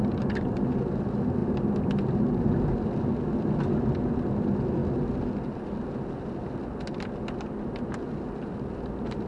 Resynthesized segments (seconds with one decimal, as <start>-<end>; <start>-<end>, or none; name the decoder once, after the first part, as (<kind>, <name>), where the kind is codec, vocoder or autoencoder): none